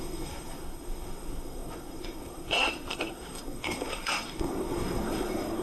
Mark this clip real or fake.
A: fake